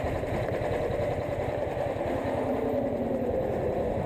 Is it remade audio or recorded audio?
recorded